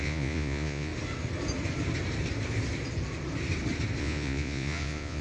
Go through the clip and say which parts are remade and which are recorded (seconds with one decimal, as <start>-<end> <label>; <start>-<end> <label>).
0.0-0.9 remade; 0.9-4.0 recorded; 4.0-5.2 remade